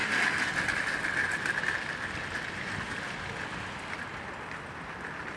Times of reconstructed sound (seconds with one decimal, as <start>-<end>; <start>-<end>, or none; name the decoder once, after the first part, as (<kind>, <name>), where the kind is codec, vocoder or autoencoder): none